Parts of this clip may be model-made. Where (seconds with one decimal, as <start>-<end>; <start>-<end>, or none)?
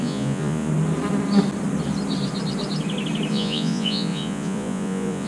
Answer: 0.0-0.7; 3.3-5.3